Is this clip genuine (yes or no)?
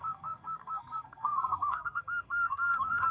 no